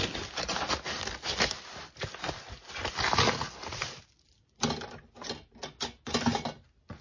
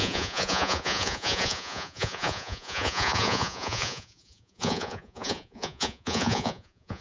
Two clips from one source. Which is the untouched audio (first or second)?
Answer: first